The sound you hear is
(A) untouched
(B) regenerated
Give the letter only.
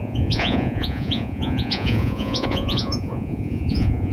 B